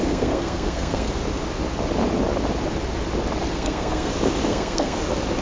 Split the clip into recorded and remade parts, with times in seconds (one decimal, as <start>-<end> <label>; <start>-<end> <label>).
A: 0.0-1.1 remade; 1.1-3.5 recorded; 3.5-4.1 remade; 4.1-4.5 recorded; 4.5-5.0 remade; 5.0-5.4 recorded